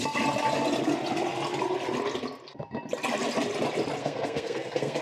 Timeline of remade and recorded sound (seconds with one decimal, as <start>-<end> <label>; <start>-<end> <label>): 0.0-4.0 recorded; 4.0-5.0 remade